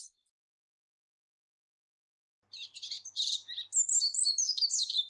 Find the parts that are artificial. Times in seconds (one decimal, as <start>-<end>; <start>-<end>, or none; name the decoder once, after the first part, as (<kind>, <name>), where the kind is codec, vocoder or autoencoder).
none